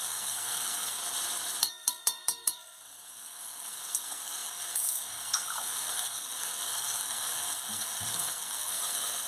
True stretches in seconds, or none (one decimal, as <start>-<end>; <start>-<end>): 1.0-1.6